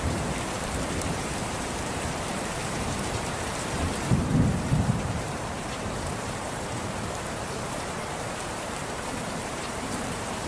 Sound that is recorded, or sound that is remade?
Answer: remade